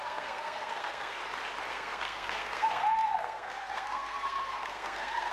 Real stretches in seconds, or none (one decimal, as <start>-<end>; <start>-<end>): 1.2-1.7